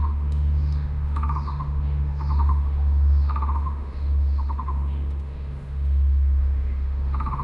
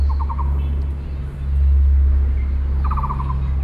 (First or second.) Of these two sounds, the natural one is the second